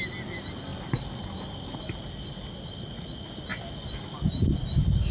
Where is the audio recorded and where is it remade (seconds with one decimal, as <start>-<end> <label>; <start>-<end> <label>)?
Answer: 0.0-5.1 recorded